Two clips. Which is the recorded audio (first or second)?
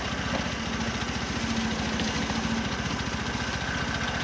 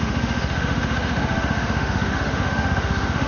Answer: first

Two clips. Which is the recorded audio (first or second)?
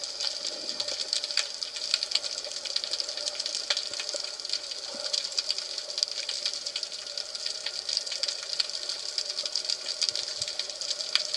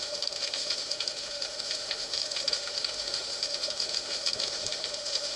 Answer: first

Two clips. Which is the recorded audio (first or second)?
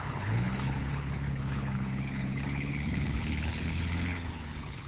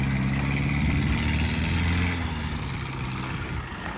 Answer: second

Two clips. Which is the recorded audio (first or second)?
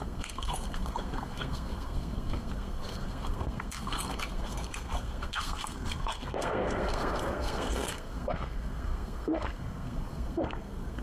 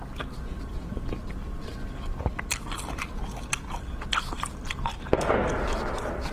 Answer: second